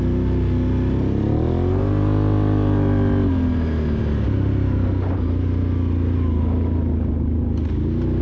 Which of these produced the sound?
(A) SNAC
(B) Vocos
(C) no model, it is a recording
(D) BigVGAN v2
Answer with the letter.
C